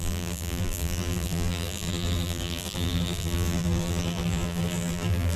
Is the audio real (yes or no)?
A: no